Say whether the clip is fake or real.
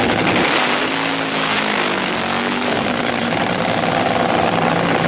real